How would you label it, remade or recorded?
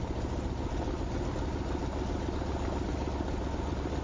recorded